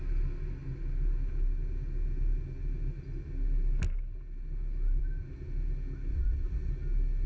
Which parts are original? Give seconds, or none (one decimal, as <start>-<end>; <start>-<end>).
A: 0.0-6.1; 6.7-7.3